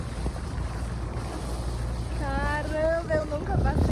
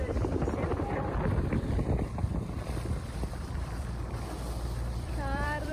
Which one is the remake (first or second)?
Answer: second